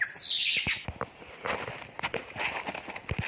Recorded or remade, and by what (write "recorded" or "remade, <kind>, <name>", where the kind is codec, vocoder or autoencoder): recorded